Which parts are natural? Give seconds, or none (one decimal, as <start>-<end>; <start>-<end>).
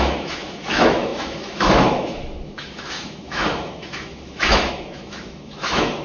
none